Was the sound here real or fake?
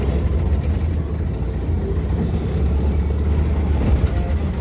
real